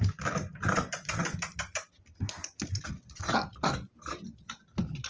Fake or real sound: real